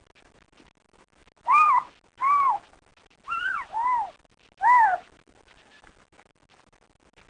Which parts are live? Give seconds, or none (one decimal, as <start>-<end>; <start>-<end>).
0.0-7.3